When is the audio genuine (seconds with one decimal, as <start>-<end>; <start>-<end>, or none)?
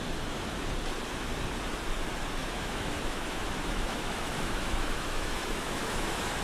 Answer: 0.0-2.4